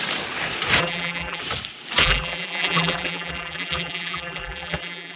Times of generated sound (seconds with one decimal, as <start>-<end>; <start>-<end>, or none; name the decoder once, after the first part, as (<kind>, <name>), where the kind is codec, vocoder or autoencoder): 0.8-1.4 (vocoder, BigVGAN v2); 2.0-5.2